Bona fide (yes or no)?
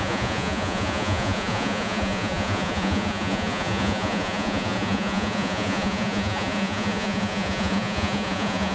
no